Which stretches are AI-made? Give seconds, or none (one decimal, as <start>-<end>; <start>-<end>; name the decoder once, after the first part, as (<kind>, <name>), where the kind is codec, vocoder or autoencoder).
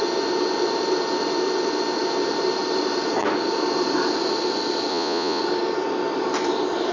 4.9-5.4 (vocoder, Vocos)